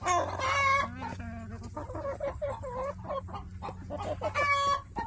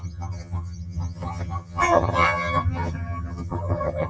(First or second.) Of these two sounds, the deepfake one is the second